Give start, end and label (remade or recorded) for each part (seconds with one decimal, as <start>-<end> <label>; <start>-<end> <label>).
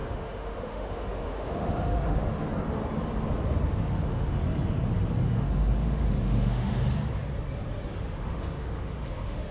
0.0-2.5 remade; 2.5-3.7 recorded; 3.7-4.4 remade; 4.4-5.2 recorded; 5.2-6.8 remade; 6.8-8.0 recorded; 8.0-9.5 remade